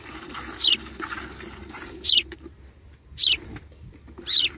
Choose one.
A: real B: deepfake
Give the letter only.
A